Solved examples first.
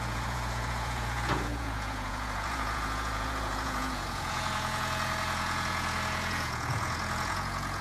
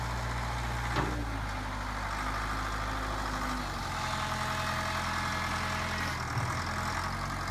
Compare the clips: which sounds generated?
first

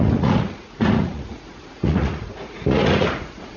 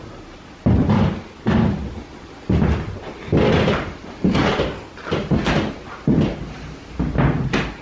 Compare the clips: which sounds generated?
first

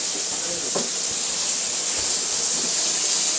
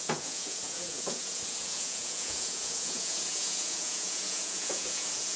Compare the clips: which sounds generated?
second